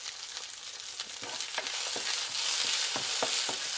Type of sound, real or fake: real